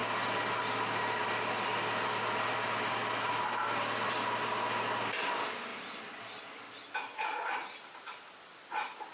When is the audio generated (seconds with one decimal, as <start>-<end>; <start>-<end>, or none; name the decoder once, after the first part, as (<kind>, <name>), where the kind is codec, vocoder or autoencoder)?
none